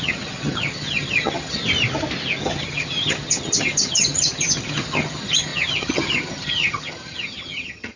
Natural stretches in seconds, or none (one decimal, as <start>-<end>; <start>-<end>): 1.6-2.4